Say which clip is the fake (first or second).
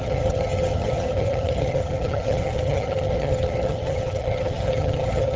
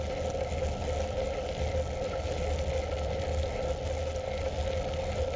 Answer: first